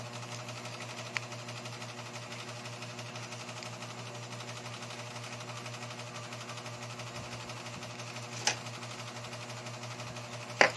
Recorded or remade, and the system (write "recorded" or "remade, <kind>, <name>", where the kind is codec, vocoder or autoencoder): recorded